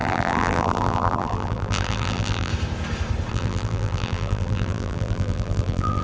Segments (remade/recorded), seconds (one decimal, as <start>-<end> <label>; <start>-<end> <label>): 0.0-2.5 remade; 2.5-3.3 recorded; 3.3-6.0 remade